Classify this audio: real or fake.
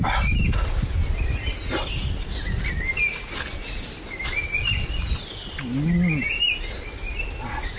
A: real